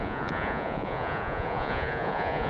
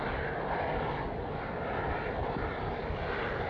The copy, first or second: first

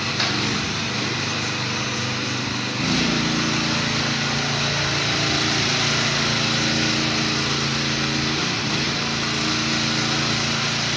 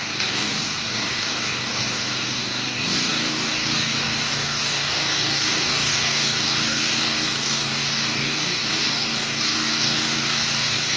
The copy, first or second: second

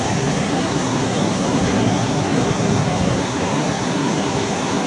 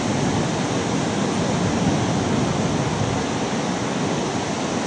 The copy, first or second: first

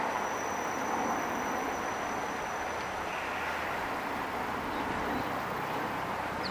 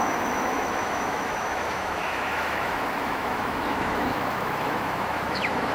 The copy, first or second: second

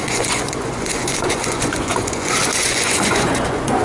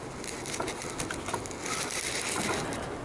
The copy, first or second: first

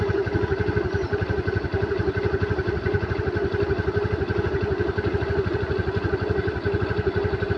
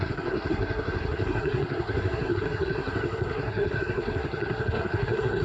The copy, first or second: second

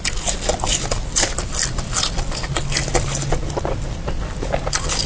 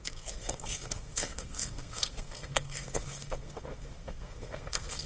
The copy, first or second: second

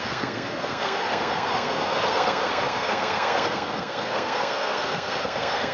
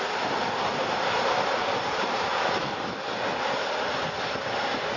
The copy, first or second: first